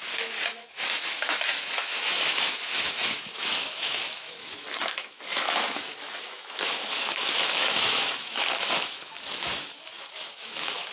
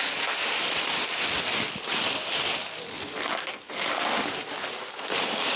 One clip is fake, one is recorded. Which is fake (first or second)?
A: first